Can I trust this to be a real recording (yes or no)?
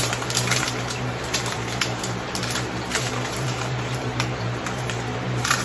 no